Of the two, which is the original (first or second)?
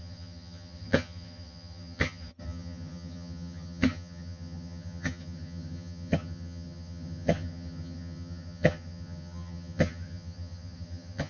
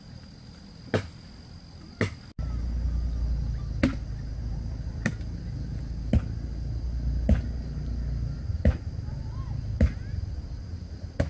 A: second